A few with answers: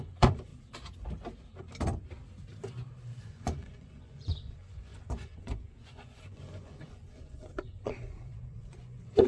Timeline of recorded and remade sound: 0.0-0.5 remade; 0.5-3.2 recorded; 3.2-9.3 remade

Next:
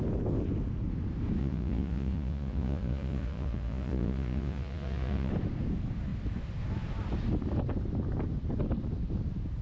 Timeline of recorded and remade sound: 0.0-1.4 recorded; 1.4-5.3 remade; 5.3-9.6 recorded

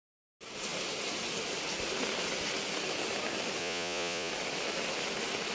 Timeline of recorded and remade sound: 0.0-3.6 recorded; 3.6-4.3 remade; 4.3-5.5 recorded

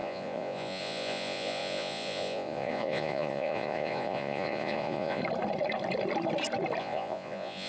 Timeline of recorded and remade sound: 0.0-5.2 remade; 5.2-6.8 recorded; 6.8-7.7 remade

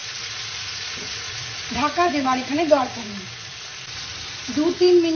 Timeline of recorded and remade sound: 0.0-3.1 remade; 3.1-5.1 recorded

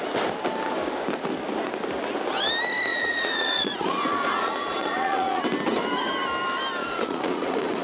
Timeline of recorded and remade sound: 0.0-2.9 recorded; 2.9-5.4 remade; 5.4-6.8 recorded; 6.8-7.8 remade

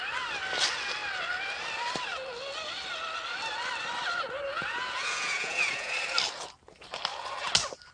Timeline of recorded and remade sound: 0.0-4.5 recorded; 4.5-5.9 remade; 5.9-7.9 recorded